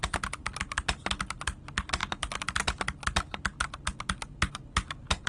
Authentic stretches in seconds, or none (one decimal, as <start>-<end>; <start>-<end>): 0.0-5.3